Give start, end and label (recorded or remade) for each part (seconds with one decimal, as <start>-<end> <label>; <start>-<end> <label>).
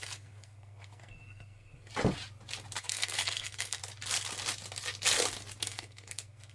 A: 0.0-1.9 remade; 1.9-2.8 recorded; 2.8-3.8 remade; 3.8-5.6 recorded; 5.6-6.5 remade